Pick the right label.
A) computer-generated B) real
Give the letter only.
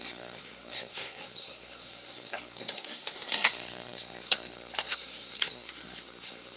A